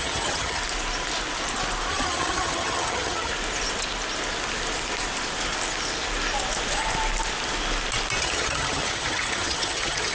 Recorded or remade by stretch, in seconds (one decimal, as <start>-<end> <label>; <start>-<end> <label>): 0.0-0.6 remade; 0.6-1.9 recorded; 1.9-3.3 remade; 3.3-8.2 recorded; 8.2-10.1 remade